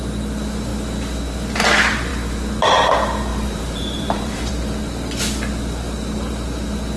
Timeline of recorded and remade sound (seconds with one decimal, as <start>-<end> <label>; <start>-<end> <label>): 0.0-3.3 recorded; 3.3-4.5 remade; 4.5-7.0 recorded